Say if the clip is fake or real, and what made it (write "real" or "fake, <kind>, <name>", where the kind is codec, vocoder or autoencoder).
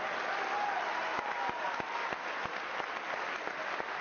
real